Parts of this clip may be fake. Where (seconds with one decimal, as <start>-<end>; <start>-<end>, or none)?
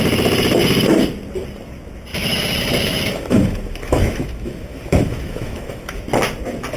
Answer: 2.1-6.0